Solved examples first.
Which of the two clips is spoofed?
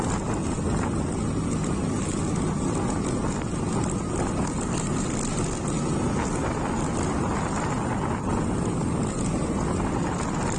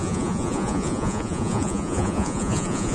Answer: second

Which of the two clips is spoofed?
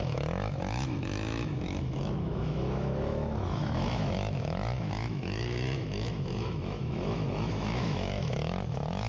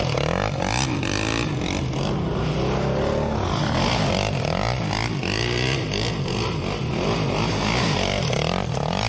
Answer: first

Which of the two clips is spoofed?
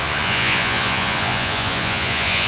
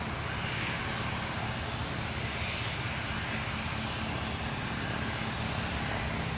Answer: first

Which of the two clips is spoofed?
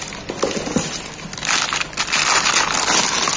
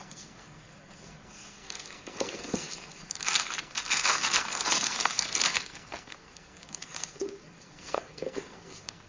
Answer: second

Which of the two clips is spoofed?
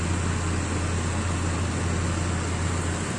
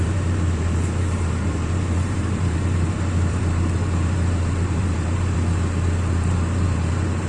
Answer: second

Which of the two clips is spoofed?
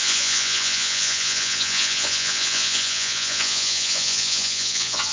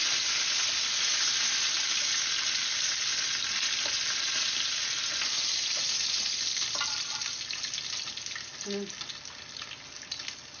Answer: first